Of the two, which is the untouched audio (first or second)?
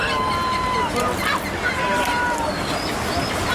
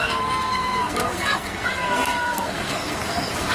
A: first